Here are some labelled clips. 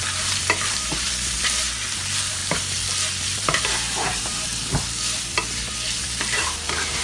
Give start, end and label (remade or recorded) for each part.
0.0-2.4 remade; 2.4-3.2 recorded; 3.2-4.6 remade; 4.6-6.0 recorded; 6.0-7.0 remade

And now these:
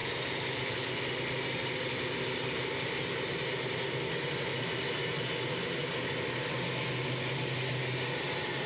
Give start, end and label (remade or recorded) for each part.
0.0-8.7 recorded

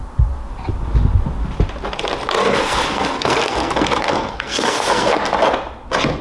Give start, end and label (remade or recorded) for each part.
0.0-2.4 recorded; 2.4-5.2 remade; 5.2-6.2 recorded

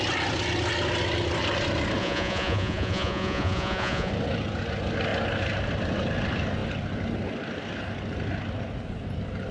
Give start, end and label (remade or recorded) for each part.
0.0-2.0 recorded; 2.0-4.1 remade; 4.1-9.5 recorded

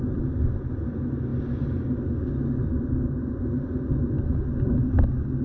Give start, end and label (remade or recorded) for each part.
0.0-5.4 recorded

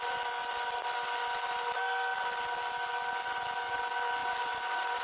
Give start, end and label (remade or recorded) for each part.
0.0-4.2 recorded; 4.2-5.0 remade

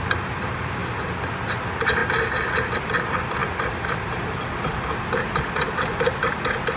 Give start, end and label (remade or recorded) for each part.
0.0-0.8 remade; 0.8-1.3 recorded; 1.3-2.0 remade; 2.0-2.8 recorded; 2.8-6.8 remade

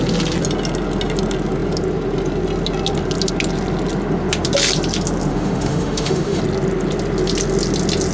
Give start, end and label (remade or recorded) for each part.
0.0-5.3 recorded; 5.3-6.4 remade; 6.4-8.1 recorded